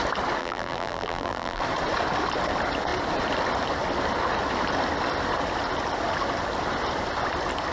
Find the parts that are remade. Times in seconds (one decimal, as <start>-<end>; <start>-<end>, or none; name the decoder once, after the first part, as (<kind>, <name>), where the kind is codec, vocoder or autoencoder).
0.4-1.6 (vocoder, BigVGAN v2)